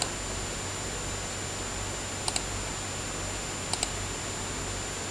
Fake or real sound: real